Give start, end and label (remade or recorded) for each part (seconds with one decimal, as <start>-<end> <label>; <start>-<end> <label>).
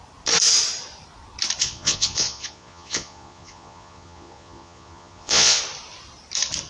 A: 0.0-1.6 recorded; 1.6-5.6 remade; 5.6-6.7 recorded